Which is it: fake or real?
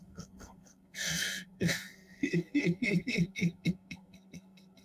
fake